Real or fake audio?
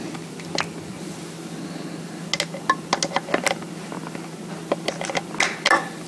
real